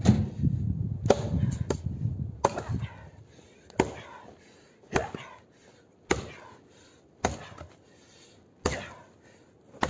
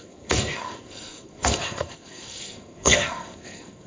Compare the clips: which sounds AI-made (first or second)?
second